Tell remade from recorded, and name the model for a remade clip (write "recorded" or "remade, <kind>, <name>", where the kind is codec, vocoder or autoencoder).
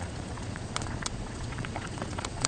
remade, vocoder, Vocos